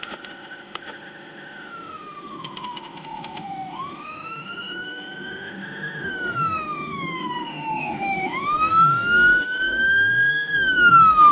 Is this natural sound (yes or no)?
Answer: no